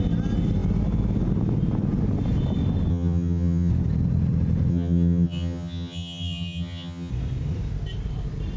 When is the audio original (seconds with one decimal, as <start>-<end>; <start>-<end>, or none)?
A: 0.0-2.9; 3.7-4.7; 7.1-8.6

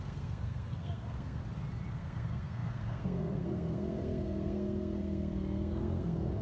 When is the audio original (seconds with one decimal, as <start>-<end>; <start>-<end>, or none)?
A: 1.4-1.9